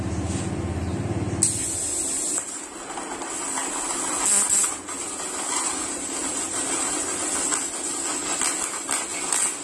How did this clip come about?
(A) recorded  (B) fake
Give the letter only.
A